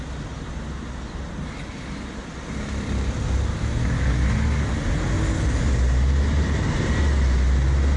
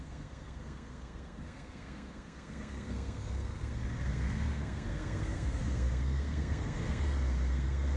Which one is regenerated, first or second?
second